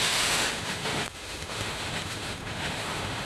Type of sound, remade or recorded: remade